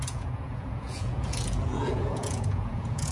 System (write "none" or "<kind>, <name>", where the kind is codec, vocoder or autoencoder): vocoder, Vocos